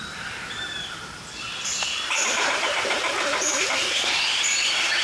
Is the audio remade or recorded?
remade